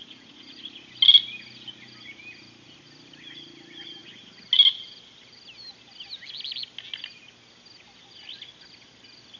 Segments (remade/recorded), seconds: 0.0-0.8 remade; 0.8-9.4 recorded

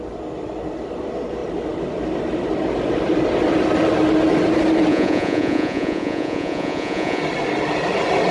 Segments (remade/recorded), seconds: 0.0-4.9 recorded; 4.9-7.2 remade; 7.2-8.3 recorded

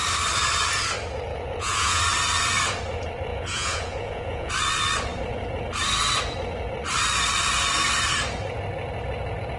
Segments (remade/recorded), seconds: 0.0-1.3 recorded; 1.3-2.0 remade; 2.0-3.3 recorded; 3.3-4.5 remade; 4.5-9.6 recorded

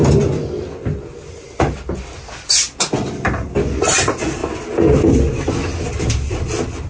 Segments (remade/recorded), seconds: 0.0-6.9 recorded

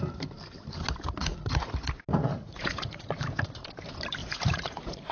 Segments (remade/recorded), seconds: 0.0-1.2 recorded; 1.2-1.7 remade; 1.7-2.1 recorded; 2.1-3.1 remade; 3.1-4.2 recorded; 4.2-5.1 remade

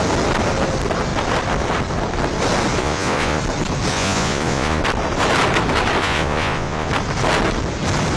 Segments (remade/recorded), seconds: 0.0-2.8 recorded; 2.8-3.4 remade; 3.4-3.9 recorded; 3.9-4.8 remade; 4.8-6.0 recorded; 6.0-6.9 remade; 6.9-8.2 recorded

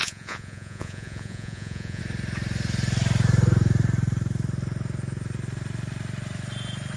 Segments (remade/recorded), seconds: 0.0-2.0 remade; 2.0-7.0 recorded

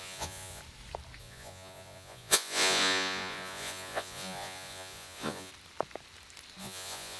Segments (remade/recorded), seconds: 0.0-0.6 remade; 0.6-1.2 recorded; 1.2-5.5 remade; 5.5-6.6 recorded; 6.6-7.2 remade